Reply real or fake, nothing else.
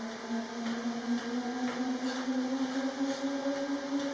real